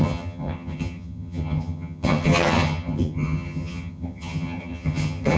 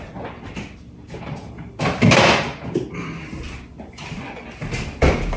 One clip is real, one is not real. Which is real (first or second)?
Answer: second